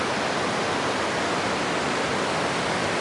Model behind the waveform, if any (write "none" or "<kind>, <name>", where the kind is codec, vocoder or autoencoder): none